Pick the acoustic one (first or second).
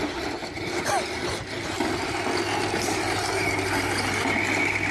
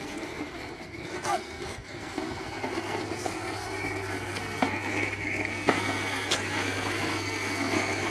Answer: first